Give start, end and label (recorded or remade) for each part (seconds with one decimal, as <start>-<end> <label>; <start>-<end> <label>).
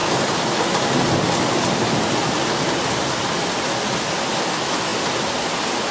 0.0-5.9 recorded